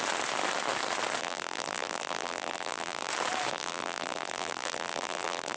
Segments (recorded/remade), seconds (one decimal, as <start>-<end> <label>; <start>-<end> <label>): 0.0-1.2 recorded; 1.2-3.1 remade; 3.1-3.5 recorded; 3.5-5.6 remade